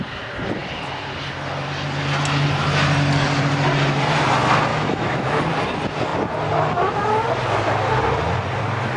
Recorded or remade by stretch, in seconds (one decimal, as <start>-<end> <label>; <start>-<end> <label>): 0.0-4.7 recorded; 4.7-5.4 remade; 5.4-9.0 recorded